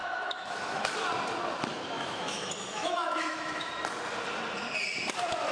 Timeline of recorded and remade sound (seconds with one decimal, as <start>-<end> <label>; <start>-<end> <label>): 0.0-0.8 remade; 0.8-1.7 recorded; 1.7-3.7 remade; 3.7-5.5 recorded